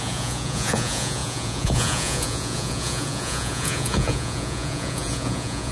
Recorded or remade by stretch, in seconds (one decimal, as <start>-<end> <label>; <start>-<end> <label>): 0.0-5.7 remade